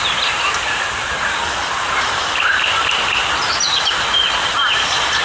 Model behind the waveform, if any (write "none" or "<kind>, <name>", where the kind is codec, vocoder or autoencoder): vocoder, BigVGAN v2